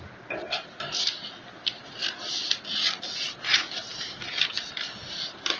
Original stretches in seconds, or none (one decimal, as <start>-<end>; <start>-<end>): 0.0-5.6